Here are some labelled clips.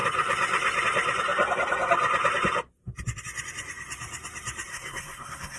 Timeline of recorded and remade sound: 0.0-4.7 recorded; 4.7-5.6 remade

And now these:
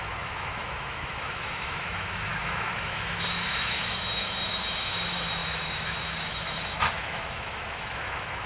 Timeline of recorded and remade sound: 0.0-8.5 remade

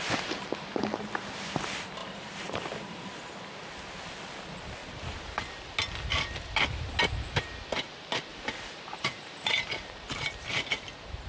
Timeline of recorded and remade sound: 0.0-2.0 recorded; 2.0-3.2 remade; 3.2-4.8 recorded; 4.8-5.4 remade; 5.4-8.3 recorded; 8.3-10.3 remade; 10.3-11.3 recorded

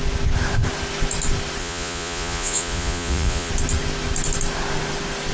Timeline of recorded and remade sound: 0.0-1.6 recorded; 1.6-3.5 remade; 3.5-5.3 recorded